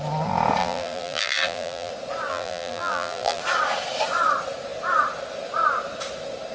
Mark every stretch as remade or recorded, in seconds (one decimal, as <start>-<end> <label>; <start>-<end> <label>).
0.0-0.6 recorded; 0.6-1.9 remade; 1.9-2.3 recorded; 2.3-3.4 remade; 3.4-6.5 recorded